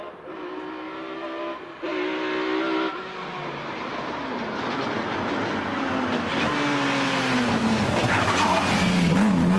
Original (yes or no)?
yes